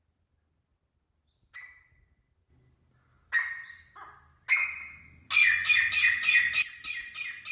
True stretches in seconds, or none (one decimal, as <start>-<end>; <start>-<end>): 0.0-7.5